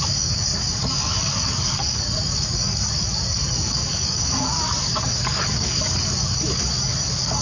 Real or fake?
fake